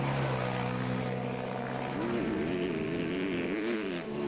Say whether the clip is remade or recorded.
recorded